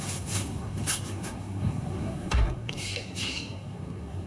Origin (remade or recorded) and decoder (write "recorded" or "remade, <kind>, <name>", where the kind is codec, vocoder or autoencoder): remade, codec, SNAC